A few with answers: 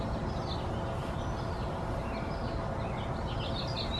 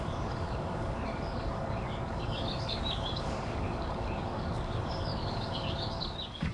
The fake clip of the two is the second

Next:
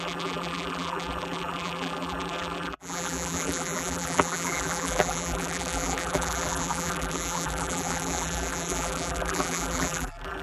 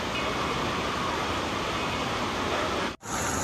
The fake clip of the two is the first